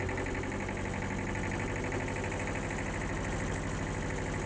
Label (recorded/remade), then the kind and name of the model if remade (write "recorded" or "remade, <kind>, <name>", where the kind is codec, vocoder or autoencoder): recorded